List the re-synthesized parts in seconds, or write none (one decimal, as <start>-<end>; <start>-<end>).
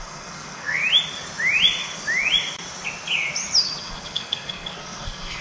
0.0-0.8; 3.8-5.4